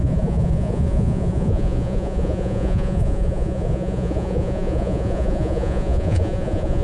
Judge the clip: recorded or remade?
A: remade